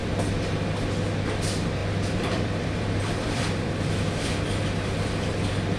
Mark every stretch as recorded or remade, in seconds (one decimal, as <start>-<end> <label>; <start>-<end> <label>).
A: 0.0-1.8 recorded; 1.8-5.1 remade; 5.1-5.8 recorded